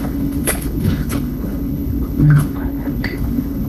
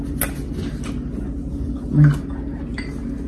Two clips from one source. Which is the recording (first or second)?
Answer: second